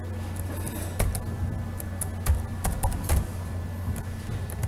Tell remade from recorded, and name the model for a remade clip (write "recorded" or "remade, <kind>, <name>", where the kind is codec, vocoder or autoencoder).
recorded